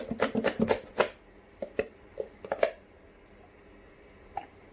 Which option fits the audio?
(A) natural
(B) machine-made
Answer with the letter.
A